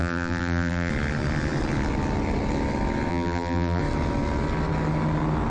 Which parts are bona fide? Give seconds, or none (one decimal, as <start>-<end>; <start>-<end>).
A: 0.9-3.1; 3.8-5.5